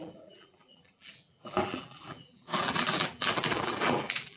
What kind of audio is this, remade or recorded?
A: remade